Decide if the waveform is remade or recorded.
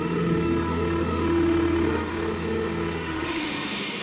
remade